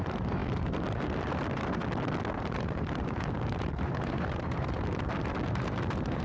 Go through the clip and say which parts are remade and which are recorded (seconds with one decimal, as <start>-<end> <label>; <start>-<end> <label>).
0.0-1.8 remade; 1.8-2.4 recorded; 2.4-6.2 remade